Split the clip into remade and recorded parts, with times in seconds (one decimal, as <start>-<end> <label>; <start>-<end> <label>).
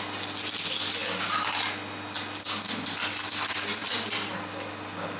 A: 0.0-3.8 recorded; 3.8-4.4 remade; 4.4-5.2 recorded